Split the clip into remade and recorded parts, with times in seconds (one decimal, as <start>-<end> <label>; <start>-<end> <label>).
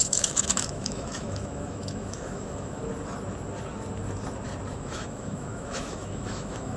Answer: 0.0-2.8 remade; 2.8-4.7 recorded; 4.7-6.8 remade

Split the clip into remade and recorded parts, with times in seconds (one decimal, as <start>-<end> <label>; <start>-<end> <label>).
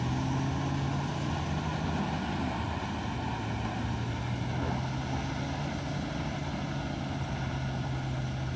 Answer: 0.0-8.6 recorded